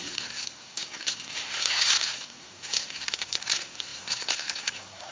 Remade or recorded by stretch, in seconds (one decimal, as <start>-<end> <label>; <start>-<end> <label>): 0.0-5.1 remade